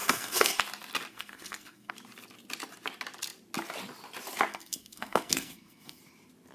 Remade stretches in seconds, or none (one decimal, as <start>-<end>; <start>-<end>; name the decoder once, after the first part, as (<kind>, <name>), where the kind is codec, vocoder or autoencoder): 0.0-0.6 (codec, SNAC); 1.1-1.9; 4.5-6.0